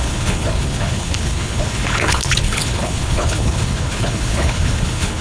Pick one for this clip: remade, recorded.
remade